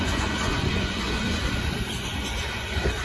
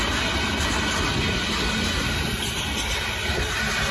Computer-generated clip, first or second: first